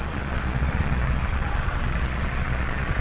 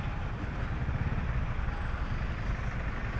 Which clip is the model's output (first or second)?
first